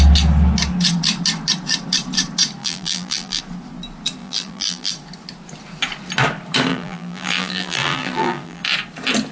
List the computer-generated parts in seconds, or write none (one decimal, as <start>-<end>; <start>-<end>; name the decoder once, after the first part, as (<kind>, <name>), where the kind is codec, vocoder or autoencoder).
2.6-3.4 (vocoder, BigVGAN v2); 4.2-4.9; 6.7-8.6